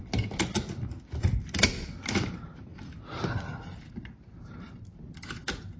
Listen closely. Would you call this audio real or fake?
real